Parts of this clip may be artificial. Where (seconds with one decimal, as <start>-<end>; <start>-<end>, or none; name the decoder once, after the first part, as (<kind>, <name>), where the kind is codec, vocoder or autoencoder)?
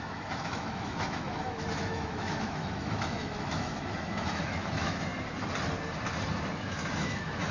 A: 0.0-5.1 (autoencoder, DAC-VAE); 6.5-7.5